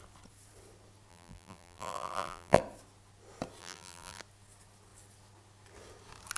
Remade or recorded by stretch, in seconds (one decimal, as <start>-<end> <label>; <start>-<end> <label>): 0.0-1.1 recorded; 1.1-2.6 remade; 2.6-3.6 recorded; 3.6-4.2 remade; 4.2-6.4 recorded